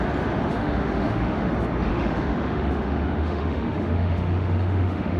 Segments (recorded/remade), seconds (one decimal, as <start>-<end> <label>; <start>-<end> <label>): 0.0-0.5 recorded; 0.5-1.5 remade; 1.5-1.9 recorded; 1.9-5.2 remade